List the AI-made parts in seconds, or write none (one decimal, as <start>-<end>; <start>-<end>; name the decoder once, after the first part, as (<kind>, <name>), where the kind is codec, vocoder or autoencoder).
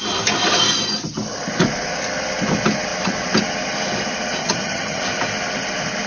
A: 4.4-5.0 (vocoder, HiFi-GAN)